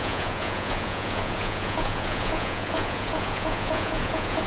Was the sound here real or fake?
fake